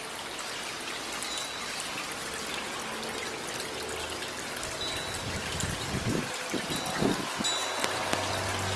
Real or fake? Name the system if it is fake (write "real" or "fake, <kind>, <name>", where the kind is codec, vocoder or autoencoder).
real